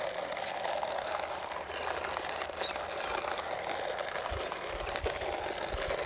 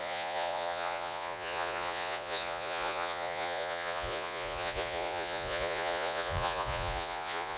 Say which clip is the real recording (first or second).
first